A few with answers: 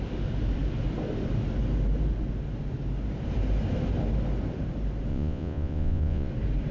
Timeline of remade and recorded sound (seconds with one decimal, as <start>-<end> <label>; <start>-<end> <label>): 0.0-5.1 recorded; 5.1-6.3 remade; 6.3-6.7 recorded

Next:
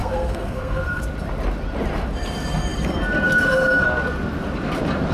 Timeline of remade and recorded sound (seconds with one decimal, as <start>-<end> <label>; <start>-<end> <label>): 0.0-1.0 remade; 1.0-5.1 recorded

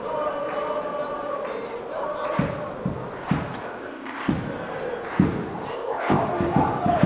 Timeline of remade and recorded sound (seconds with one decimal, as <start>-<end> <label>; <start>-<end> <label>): 0.0-3.6 recorded; 3.6-4.3 remade; 4.3-5.7 recorded; 5.7-6.2 remade; 6.2-7.1 recorded

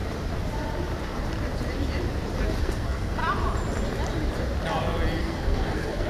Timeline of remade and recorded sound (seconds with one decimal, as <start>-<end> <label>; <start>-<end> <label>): 0.0-2.6 recorded; 2.6-3.2 remade; 3.2-5.2 recorded; 5.2-6.1 remade